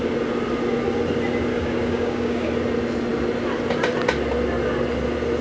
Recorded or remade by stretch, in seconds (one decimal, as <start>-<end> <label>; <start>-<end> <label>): 0.0-1.5 recorded; 1.5-2.5 remade; 2.5-5.4 recorded